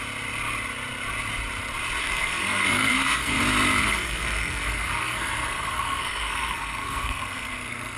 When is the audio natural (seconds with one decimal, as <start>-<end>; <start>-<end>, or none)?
0.0-2.0; 3.4-3.8